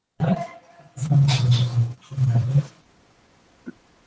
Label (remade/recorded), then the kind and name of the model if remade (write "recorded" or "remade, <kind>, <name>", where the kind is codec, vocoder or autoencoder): remade, vocoder, Vocos